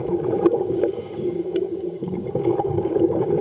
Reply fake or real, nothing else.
fake